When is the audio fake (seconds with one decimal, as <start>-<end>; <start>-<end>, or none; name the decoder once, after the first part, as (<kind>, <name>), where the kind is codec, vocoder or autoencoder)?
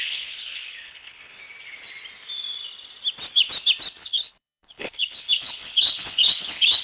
0.0-1.4 (codec, HILCodec); 4.0-6.8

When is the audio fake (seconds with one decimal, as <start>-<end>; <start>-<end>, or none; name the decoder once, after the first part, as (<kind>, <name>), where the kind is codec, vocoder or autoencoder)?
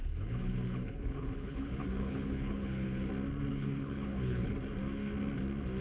0.0-3.1 (codec, HILCodec); 3.5-4.5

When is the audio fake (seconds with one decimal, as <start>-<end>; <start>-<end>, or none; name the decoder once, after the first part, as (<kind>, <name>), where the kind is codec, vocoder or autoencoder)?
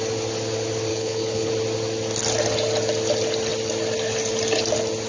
0.9-1.5 (codec, HILCodec)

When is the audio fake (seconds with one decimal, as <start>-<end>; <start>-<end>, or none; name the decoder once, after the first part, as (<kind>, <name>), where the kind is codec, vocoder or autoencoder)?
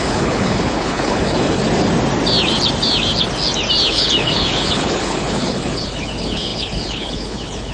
0.0-1.6 (codec, HILCodec); 3.9-7.7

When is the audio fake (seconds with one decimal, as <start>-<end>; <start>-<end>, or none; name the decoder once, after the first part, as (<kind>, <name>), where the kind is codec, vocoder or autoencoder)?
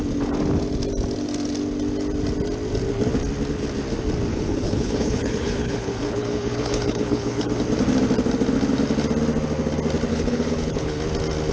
4.3-7.5 (codec, HILCodec); 10.1-11.0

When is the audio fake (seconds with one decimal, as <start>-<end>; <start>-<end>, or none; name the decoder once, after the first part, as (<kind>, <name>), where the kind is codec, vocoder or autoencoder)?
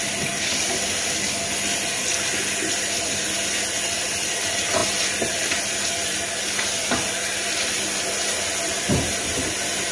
none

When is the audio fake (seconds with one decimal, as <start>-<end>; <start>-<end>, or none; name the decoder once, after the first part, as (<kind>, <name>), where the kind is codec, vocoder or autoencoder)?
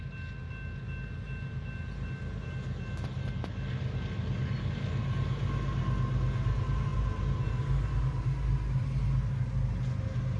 none